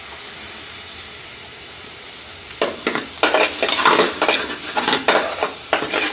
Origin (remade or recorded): recorded